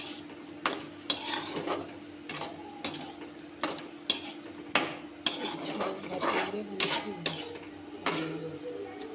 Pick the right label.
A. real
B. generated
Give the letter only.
A